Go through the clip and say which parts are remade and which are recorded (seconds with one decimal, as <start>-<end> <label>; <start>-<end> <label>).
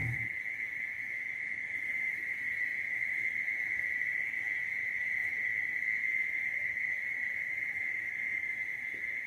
0.0-9.3 recorded